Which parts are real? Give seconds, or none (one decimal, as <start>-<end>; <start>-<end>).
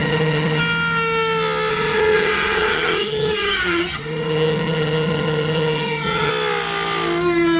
0.6-1.7; 6.3-7.6